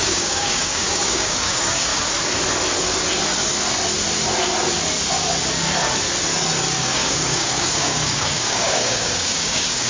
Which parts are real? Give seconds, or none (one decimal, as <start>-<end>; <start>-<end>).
1.9-6.8